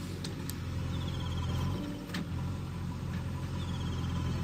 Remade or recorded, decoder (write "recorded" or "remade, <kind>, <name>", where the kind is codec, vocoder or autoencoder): recorded